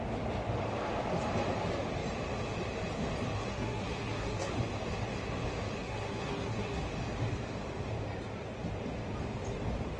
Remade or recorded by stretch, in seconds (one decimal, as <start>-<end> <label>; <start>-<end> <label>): 0.0-3.5 recorded; 3.5-4.5 remade; 4.5-5.8 recorded; 5.8-6.8 remade; 6.8-10.0 recorded